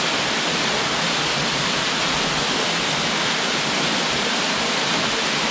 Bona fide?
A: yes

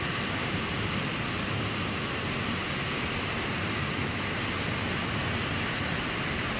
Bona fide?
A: yes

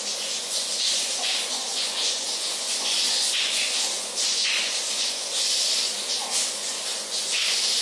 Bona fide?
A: no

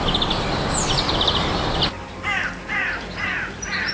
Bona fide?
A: yes